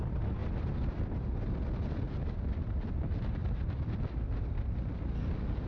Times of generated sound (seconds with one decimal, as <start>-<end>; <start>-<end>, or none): 3.4-5.2